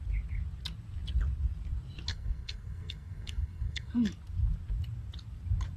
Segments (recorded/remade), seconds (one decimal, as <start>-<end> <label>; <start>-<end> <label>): 0.0-2.1 recorded; 2.1-3.9 remade; 3.9-5.8 recorded